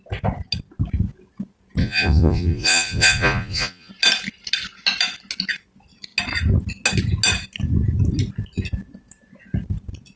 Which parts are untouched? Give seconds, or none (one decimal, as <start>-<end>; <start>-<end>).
0.0-1.8; 3.9-10.2